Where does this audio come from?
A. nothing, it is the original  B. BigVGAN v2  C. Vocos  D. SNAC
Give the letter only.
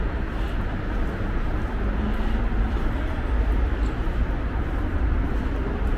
A